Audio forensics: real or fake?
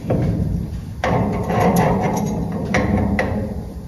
fake